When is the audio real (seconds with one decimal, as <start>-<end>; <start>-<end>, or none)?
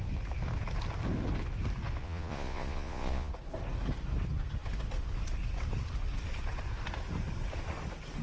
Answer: 0.0-2.0; 3.3-8.2